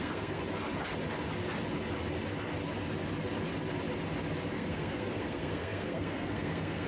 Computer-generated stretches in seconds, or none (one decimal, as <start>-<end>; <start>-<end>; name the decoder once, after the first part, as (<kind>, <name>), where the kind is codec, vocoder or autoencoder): 0.0-0.4 (codec, SNAC); 4.5-6.9